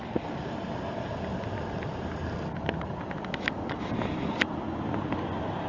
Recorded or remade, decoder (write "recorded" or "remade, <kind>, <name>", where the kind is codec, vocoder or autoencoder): recorded